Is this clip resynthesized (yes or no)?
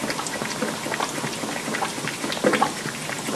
no